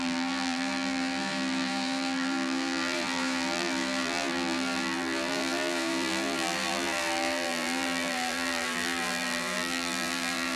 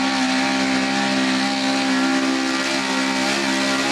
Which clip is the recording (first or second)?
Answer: second